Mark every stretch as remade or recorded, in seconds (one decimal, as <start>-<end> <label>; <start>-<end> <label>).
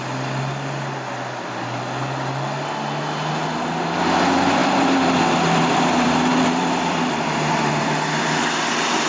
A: 0.0-4.6 recorded; 4.6-8.7 remade; 8.7-9.1 recorded